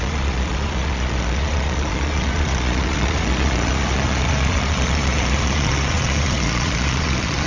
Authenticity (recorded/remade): remade